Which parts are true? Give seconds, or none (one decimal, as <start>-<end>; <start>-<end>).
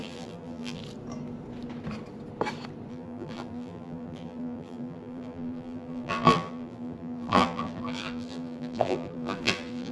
0.8-2.9